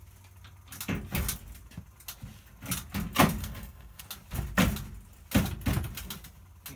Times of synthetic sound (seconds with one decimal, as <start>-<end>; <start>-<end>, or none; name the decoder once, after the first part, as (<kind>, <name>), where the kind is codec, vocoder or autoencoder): 3.4-4.0 (codec, SNAC)